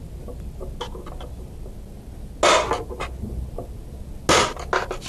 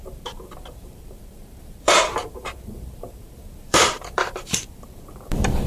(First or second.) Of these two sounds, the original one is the first